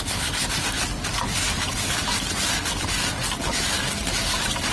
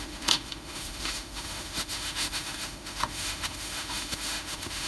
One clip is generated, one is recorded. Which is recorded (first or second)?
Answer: first